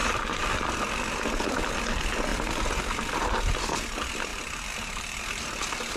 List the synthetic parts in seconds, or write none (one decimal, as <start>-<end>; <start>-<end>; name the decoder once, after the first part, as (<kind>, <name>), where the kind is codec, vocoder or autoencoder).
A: 0.0-1.7 (vocoder, BigVGAN v2); 2.3-3.3; 4.3-5.2